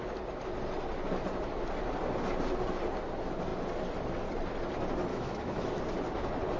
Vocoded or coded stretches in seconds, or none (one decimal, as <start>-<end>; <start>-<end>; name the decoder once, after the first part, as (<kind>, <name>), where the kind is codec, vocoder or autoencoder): 5.1-5.8 (autoencoder, DAC-VAE)